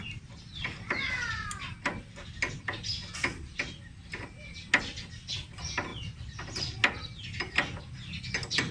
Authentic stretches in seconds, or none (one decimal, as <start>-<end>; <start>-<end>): 0.0-8.7